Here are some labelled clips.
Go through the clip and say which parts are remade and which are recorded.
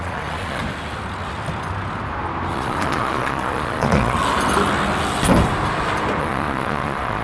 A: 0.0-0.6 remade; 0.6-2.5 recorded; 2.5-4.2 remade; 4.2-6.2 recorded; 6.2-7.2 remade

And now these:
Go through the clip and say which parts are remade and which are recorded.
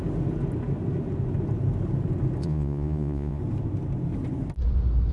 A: 0.0-2.4 recorded; 2.4-3.4 remade; 3.4-5.1 recorded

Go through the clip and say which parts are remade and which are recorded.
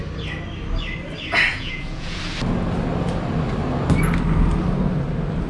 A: 0.0-1.5 recorded; 1.5-2.2 remade; 2.2-5.5 recorded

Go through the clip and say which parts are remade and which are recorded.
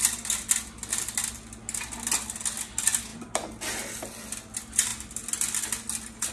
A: 0.0-6.3 recorded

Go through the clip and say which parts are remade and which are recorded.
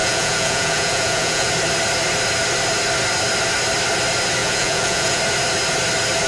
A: 0.0-1.5 remade; 1.5-4.4 recorded; 4.4-5.2 remade; 5.2-6.3 recorded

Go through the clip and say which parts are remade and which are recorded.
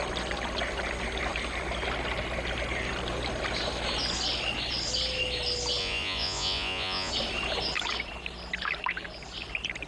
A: 0.0-5.8 recorded; 5.8-7.1 remade; 7.1-9.9 recorded